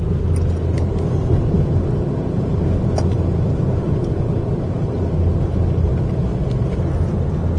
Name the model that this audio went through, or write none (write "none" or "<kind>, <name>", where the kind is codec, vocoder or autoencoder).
none